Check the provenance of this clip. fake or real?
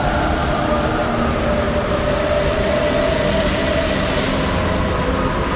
real